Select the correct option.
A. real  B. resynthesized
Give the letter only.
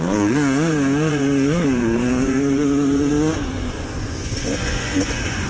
B